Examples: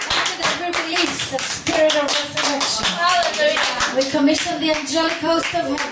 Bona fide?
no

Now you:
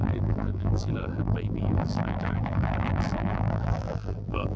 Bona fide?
no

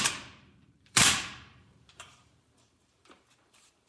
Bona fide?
no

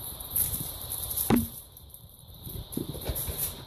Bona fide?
no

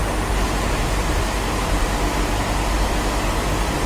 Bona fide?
yes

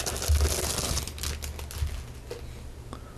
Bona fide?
yes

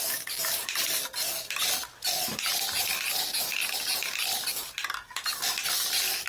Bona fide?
yes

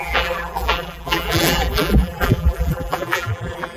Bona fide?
no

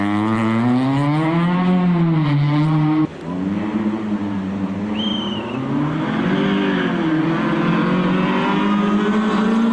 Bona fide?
yes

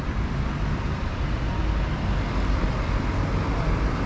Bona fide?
yes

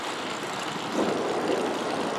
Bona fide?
yes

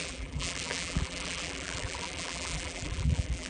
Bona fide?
no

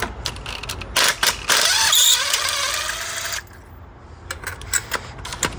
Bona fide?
yes